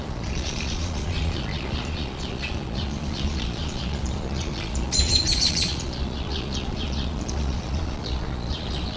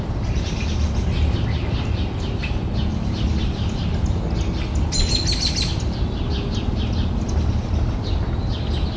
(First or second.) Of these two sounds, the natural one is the second